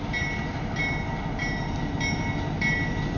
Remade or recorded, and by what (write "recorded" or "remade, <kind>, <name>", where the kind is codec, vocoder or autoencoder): recorded